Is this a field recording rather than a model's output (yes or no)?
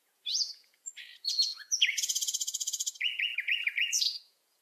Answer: no